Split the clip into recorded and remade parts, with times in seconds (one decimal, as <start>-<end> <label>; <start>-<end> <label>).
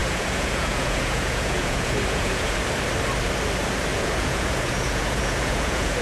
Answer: 0.0-2.6 remade; 2.6-3.9 recorded; 3.9-6.0 remade